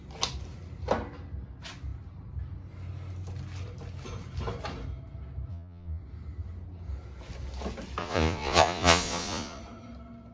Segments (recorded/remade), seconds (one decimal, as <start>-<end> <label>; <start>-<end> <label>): 0.0-5.5 recorded; 5.5-6.0 remade; 6.0-8.0 recorded; 8.0-9.6 remade; 9.6-10.3 recorded